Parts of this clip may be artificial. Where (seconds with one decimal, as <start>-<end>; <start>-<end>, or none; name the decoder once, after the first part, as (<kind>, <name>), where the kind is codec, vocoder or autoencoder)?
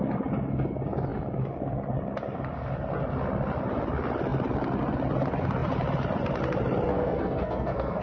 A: 6.9-8.0 (codec, SNAC)